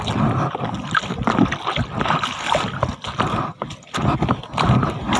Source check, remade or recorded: recorded